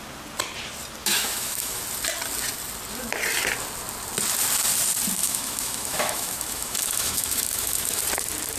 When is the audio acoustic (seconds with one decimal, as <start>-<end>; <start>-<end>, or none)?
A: 0.0-1.0; 1.8-5.2; 8.0-8.6